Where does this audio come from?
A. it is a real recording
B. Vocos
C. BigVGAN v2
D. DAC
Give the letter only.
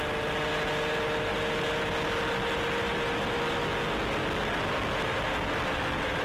A